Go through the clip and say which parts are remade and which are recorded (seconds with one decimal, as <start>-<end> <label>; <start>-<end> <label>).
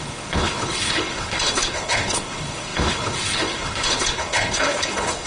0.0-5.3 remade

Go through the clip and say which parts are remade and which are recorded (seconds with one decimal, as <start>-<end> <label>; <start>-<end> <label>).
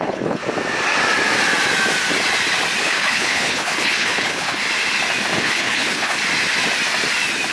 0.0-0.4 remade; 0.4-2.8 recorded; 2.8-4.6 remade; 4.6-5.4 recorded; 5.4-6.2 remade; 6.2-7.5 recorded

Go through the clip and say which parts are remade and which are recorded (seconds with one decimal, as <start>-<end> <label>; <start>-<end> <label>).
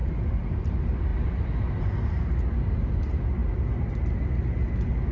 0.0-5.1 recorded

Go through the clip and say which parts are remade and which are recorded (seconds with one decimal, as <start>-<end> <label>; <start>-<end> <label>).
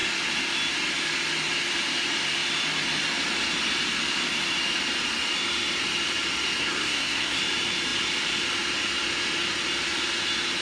0.0-6.6 recorded; 6.6-7.4 remade; 7.4-10.6 recorded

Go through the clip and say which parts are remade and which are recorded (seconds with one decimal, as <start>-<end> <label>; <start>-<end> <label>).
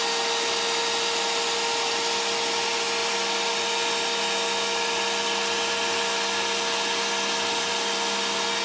0.0-8.6 recorded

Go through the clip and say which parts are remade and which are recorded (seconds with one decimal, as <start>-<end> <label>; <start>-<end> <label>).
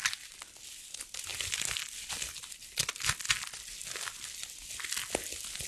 0.0-5.7 recorded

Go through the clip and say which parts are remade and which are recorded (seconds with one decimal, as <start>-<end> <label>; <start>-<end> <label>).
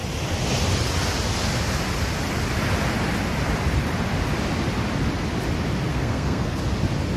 0.0-5.9 recorded; 5.9-6.6 remade; 6.6-7.2 recorded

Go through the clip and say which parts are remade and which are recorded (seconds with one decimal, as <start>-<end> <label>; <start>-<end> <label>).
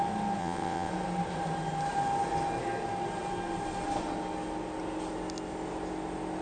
0.0-0.4 recorded; 0.4-0.9 remade; 0.9-6.4 recorded